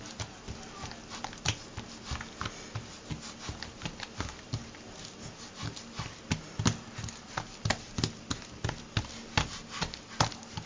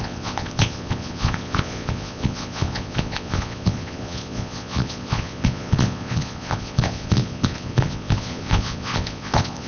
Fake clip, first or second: second